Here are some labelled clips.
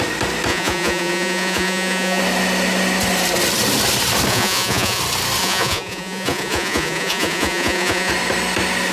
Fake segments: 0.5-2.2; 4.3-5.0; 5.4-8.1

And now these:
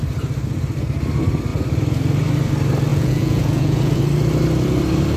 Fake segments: 2.9-4.0

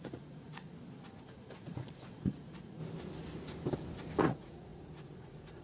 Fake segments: 0.0-0.7; 1.2-2.8; 4.2-5.6

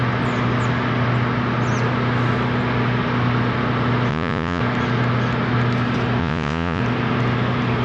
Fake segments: 4.1-4.6; 6.2-6.8

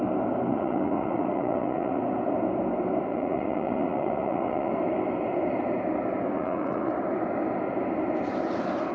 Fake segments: 0.5-2.0; 3.1-4.7; 6.3-6.9